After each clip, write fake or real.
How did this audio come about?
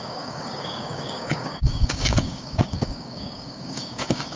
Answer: fake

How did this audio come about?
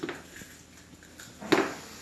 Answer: real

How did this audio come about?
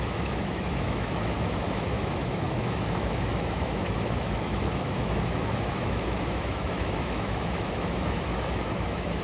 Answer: fake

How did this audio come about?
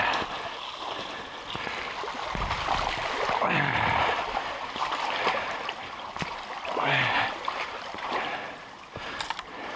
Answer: fake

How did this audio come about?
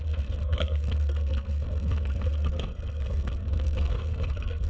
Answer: fake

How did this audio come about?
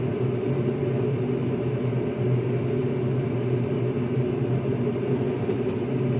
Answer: real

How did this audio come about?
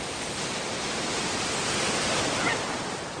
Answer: real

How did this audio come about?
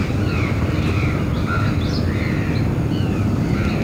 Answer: real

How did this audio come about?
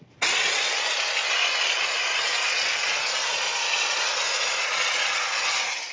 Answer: real